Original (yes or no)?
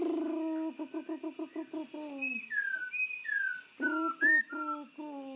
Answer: yes